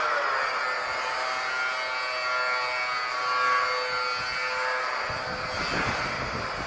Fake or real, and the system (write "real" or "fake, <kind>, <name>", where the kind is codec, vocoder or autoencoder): real